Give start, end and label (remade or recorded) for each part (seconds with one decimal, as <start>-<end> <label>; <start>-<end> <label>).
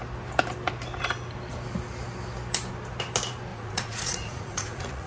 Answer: 0.0-3.5 recorded; 3.5-5.1 remade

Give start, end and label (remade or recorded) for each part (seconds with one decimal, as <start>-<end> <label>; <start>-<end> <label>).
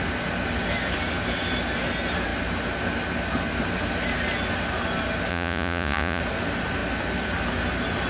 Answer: 0.0-5.3 recorded; 5.3-6.2 remade; 6.2-8.1 recorded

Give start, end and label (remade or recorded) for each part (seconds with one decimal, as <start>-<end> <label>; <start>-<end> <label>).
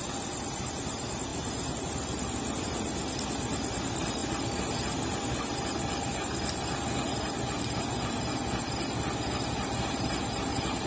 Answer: 0.0-10.9 recorded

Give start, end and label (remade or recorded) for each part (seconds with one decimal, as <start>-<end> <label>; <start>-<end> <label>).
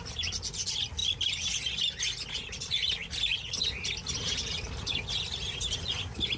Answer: 0.0-6.4 recorded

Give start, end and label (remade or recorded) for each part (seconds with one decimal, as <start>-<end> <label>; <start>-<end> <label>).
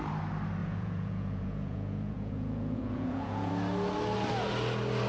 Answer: 0.0-0.6 recorded; 0.6-3.5 remade; 3.5-5.1 recorded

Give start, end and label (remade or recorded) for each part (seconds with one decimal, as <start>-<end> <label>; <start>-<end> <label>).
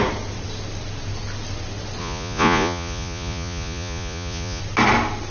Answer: 0.0-2.0 recorded; 2.0-4.6 remade; 4.6-5.3 recorded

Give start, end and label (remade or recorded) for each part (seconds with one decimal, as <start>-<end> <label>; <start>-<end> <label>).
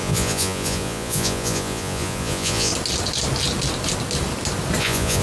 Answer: 0.0-2.7 remade; 2.7-4.8 recorded; 4.8-5.2 remade